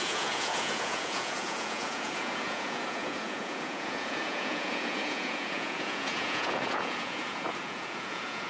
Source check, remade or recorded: remade